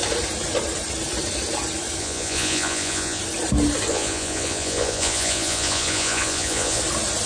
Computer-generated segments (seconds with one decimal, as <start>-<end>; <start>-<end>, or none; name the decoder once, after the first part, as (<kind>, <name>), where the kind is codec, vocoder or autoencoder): 2.0-3.2 (vocoder, Vocos); 3.9-6.8